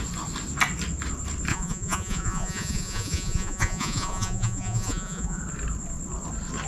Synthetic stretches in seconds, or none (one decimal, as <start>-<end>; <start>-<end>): 1.5-5.4